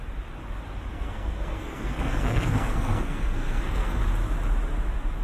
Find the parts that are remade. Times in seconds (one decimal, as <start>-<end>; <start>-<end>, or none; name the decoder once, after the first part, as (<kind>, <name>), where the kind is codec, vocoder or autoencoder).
0.9-4.0 (codec, SNAC)

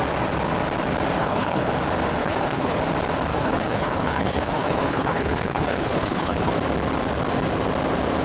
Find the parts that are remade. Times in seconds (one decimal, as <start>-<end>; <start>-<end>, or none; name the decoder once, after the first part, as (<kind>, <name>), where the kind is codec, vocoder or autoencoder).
1.2-1.7 (codec, HILCodec); 2.2-2.8; 3.3-6.5